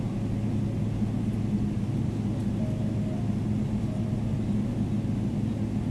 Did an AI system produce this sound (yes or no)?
no